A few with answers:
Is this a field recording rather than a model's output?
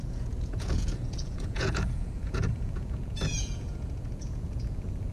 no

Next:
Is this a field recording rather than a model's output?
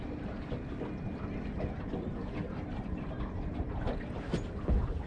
no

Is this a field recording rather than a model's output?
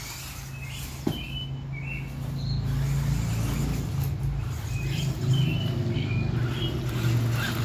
yes